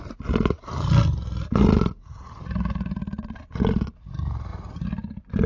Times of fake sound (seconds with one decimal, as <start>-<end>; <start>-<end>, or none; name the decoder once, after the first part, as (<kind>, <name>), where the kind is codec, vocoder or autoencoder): 0.0-5.5 (vocoder, BigVGAN v2)